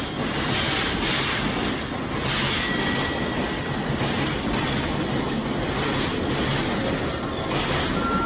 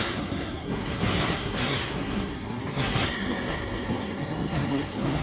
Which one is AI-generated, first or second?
second